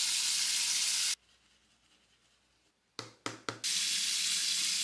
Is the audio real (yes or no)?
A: yes